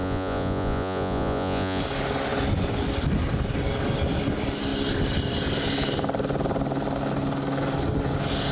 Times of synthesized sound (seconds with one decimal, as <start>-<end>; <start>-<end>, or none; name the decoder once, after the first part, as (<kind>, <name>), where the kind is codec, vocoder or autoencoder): 0.0-1.8 (vocoder, Vocos)